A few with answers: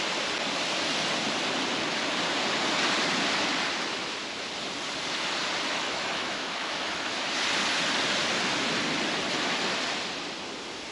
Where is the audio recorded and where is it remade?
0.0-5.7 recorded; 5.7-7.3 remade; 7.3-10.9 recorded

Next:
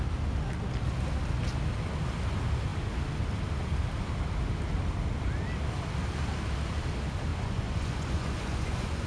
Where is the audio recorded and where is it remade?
0.0-7.3 recorded; 7.3-9.1 remade

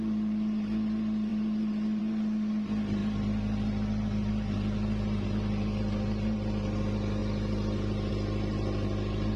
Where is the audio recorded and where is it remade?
0.0-9.4 recorded

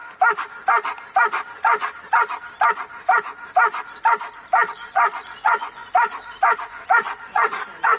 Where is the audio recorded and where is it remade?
0.0-4.7 recorded; 4.7-5.8 remade; 5.8-6.7 recorded; 6.7-8.0 remade

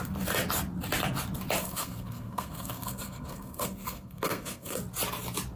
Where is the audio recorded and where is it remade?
0.0-1.6 recorded; 1.6-4.8 remade; 4.8-5.6 recorded

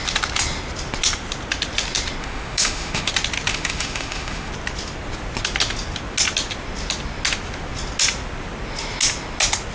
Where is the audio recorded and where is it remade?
0.0-2.2 recorded; 2.2-3.1 remade; 3.1-3.5 recorded; 3.5-4.5 remade; 4.5-9.7 recorded